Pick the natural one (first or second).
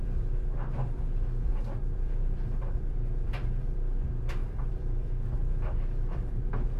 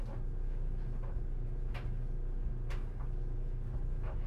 second